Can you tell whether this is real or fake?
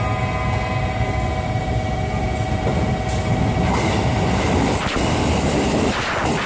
real